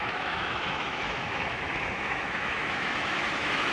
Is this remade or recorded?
remade